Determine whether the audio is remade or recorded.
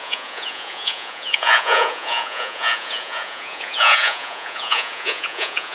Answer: remade